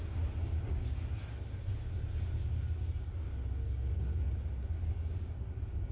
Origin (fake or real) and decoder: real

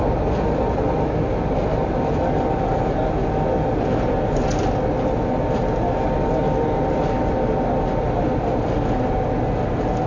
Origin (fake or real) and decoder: real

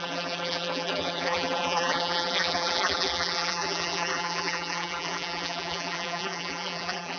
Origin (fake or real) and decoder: fake, vocoder, BigVGAN v2